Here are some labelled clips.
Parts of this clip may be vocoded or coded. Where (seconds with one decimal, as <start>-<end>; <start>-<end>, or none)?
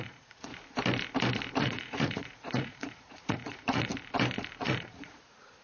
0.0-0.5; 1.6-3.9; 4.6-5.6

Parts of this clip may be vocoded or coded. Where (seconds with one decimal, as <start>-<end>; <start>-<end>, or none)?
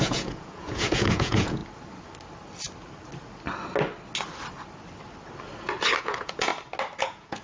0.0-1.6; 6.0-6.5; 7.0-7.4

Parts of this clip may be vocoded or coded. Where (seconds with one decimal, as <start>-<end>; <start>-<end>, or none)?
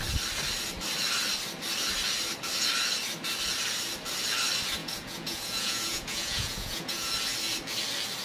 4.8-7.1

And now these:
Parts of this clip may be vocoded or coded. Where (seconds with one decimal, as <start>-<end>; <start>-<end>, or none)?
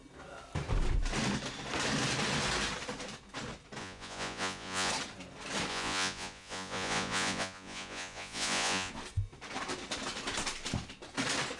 3.8-4.9; 5.7-8.9